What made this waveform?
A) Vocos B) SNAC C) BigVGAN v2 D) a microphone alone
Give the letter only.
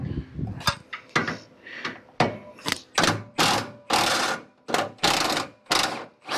D